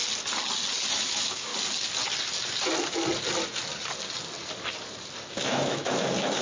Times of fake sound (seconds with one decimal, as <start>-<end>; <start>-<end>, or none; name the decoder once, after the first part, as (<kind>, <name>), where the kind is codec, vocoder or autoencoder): 0.9-1.5 (autoencoder, DAC-VAE); 5.3-6.4